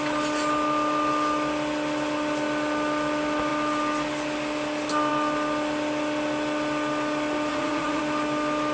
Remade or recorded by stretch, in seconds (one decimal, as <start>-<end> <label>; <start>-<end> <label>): 0.0-7.5 recorded; 7.5-8.0 remade; 8.0-8.7 recorded

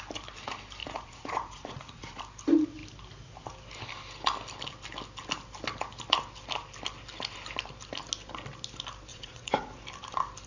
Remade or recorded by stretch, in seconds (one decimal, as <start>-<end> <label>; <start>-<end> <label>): 0.0-0.8 recorded; 0.8-2.2 remade; 2.2-9.1 recorded; 9.1-9.8 remade; 9.8-10.5 recorded

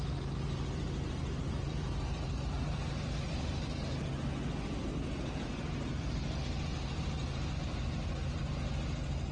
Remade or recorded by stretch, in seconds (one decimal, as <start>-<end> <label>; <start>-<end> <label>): 0.0-1.0 recorded; 1.0-3.7 remade; 3.7-4.9 recorded; 4.9-6.4 remade; 6.4-7.2 recorded; 7.2-8.1 remade; 8.1-9.3 recorded

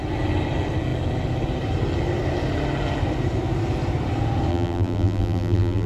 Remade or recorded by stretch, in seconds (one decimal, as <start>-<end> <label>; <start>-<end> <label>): 0.0-4.5 recorded; 4.5-5.9 remade

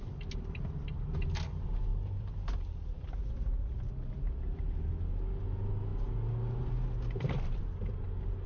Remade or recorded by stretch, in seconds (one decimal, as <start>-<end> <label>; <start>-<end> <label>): 0.0-1.9 recorded; 1.9-3.3 remade; 3.3-3.7 recorded; 3.7-4.9 remade; 4.9-8.5 recorded

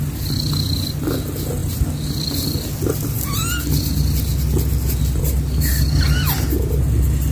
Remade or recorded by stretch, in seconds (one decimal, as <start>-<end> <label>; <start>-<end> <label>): 0.0-7.3 recorded

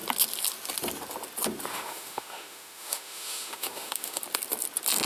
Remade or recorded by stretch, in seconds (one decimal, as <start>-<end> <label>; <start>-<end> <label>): 0.0-1.7 recorded; 1.7-4.2 remade; 4.2-5.1 recorded

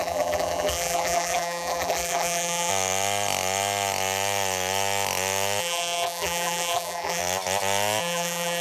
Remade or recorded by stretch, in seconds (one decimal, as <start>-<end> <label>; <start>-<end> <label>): 0.0-2.7 remade; 2.7-5.6 recorded; 5.6-7.2 remade; 7.2-8.0 recorded; 8.0-8.6 remade